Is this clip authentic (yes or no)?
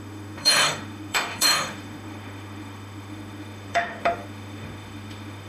no